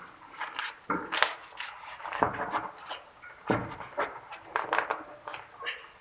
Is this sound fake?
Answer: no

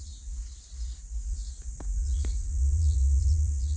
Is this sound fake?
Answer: yes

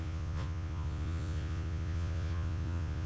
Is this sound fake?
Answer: yes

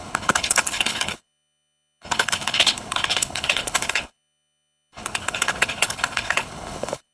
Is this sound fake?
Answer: yes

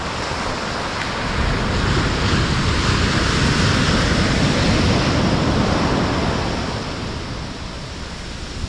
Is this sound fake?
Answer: no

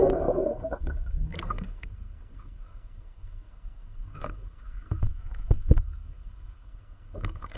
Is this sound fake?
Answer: yes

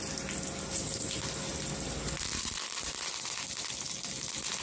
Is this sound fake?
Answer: no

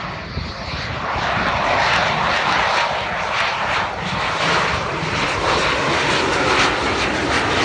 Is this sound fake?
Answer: no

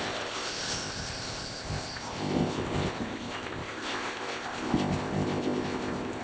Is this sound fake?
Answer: yes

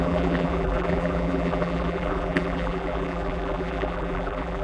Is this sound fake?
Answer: yes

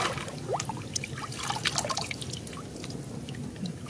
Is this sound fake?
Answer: no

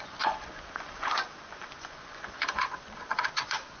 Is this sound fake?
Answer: yes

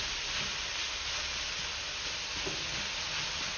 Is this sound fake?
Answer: no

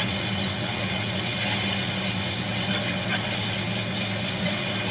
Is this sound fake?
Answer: yes